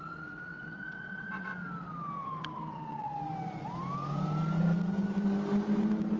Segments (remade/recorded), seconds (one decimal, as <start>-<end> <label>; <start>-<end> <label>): 0.0-1.5 remade; 1.5-2.4 recorded; 2.4-3.1 remade; 3.1-6.2 recorded